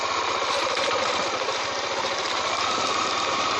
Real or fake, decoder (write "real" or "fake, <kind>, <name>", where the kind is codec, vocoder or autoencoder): real